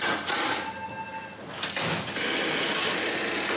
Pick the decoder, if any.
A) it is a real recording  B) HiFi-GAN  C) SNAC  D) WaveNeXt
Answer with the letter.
A